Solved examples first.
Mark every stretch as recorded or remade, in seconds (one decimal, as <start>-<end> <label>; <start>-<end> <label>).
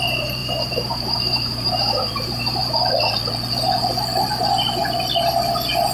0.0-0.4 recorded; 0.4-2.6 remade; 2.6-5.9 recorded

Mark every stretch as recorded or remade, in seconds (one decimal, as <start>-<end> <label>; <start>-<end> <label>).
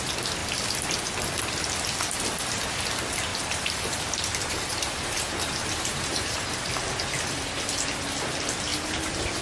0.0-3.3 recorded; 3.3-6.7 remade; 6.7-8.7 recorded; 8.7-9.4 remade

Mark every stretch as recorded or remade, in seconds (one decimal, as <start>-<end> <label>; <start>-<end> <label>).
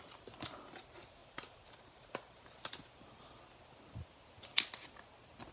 0.0-1.2 recorded; 1.2-3.4 remade; 3.4-5.5 recorded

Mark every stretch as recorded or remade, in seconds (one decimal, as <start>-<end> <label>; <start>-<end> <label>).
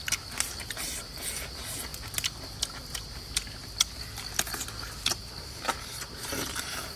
0.0-7.0 recorded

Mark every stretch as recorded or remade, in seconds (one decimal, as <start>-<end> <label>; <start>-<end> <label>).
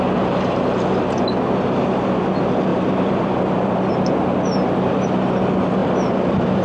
0.0-2.7 recorded; 2.7-3.9 remade; 3.9-5.8 recorded; 5.8-6.6 remade